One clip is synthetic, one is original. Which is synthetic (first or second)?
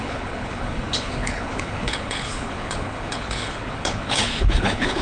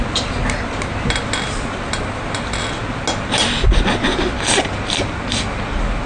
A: first